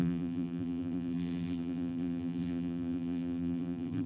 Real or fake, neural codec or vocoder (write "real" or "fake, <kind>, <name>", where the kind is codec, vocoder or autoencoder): fake, vocoder, BigVGAN v2